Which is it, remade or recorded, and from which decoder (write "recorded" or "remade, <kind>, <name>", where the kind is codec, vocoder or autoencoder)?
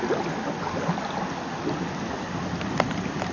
recorded